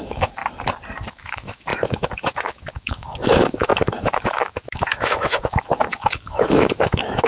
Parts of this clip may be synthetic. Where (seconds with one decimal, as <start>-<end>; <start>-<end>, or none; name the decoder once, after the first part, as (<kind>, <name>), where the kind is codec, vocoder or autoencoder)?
0.0-0.4 (autoencoder, DAC-VAE); 1.1-7.3